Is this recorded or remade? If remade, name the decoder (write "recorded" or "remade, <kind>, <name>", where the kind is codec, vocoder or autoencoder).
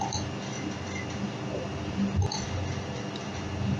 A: recorded